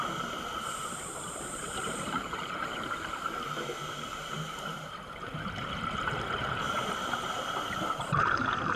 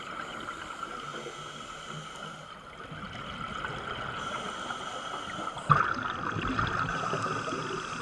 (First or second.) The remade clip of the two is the first